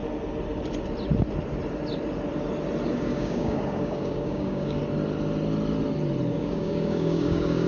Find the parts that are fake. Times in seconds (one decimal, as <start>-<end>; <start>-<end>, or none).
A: 2.9-4.8; 6.3-7.7